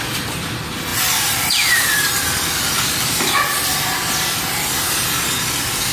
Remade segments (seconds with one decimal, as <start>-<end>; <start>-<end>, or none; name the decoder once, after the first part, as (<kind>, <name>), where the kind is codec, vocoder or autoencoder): 0.0-5.9 (vocoder, BigVGAN v2)